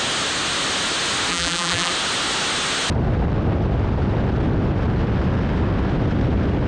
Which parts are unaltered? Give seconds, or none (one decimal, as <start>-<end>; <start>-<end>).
0.0-1.3; 1.9-6.7